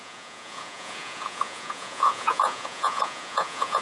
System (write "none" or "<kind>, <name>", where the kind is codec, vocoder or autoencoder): vocoder, Vocos